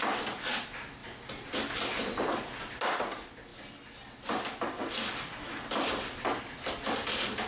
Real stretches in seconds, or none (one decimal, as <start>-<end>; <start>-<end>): 0.0-7.5